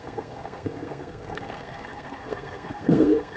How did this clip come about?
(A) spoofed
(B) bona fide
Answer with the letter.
A